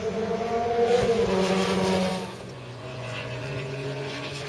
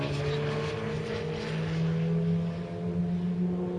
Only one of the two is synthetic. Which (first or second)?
first